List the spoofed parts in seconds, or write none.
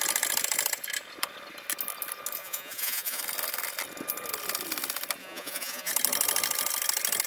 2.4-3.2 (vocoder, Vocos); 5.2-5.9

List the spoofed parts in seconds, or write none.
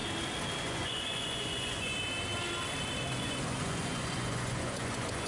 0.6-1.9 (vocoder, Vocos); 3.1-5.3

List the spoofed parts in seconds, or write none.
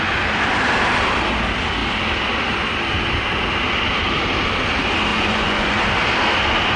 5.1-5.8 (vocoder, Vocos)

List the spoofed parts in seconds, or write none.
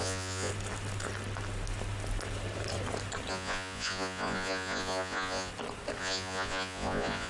0.0-0.5 (vocoder, Vocos); 3.3-5.5; 6.0-7.3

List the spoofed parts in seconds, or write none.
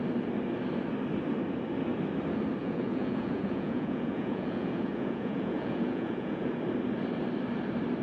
2.6-6.5 (vocoder, Vocos)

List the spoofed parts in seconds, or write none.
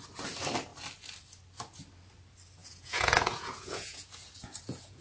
2.6-5.0 (vocoder, Vocos)